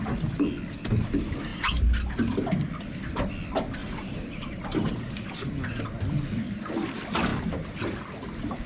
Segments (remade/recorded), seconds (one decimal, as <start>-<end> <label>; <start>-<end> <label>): 0.0-3.8 recorded; 3.8-5.8 remade; 5.8-8.7 recorded